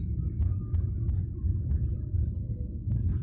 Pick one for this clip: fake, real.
fake